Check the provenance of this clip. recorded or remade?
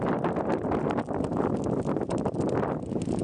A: recorded